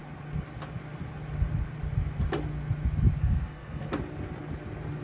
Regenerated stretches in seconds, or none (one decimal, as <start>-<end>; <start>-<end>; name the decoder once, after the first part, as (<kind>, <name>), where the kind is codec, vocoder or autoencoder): 3.2-3.9 (codec, SNAC)